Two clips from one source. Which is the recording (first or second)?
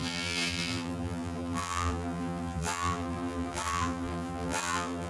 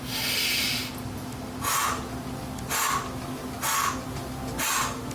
second